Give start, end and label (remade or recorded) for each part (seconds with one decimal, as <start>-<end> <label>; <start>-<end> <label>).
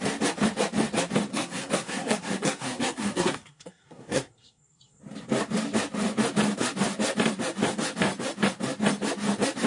0.0-1.3 recorded; 1.3-5.0 remade; 5.0-9.7 recorded